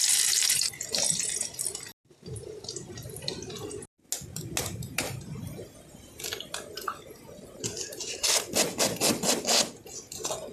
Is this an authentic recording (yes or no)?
yes